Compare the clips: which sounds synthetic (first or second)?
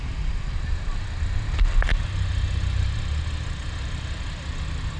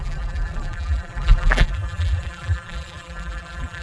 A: second